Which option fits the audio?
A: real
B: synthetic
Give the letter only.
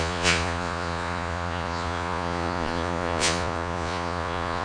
B